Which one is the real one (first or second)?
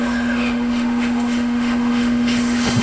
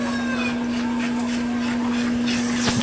second